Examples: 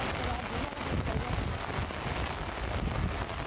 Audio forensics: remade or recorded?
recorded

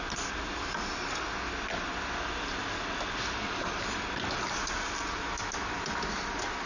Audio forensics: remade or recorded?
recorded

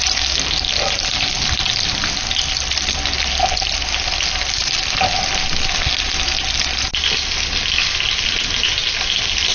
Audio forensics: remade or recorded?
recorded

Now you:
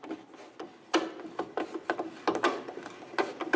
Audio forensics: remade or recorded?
recorded